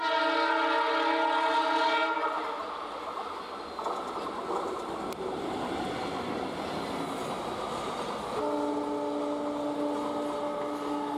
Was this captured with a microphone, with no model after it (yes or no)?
yes